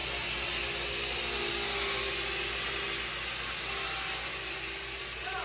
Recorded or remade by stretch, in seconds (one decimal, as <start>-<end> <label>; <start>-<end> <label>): 0.0-5.4 recorded